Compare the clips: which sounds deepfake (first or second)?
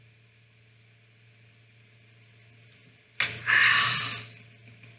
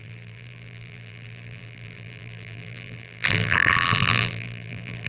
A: second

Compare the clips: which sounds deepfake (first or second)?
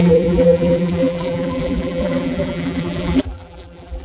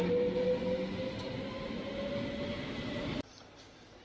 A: first